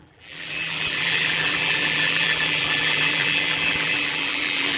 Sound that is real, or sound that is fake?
fake